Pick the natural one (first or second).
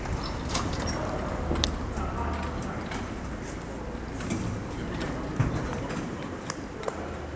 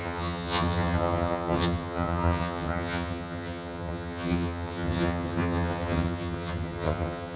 first